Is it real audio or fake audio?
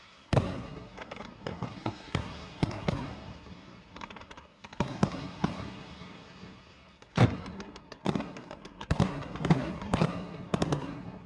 fake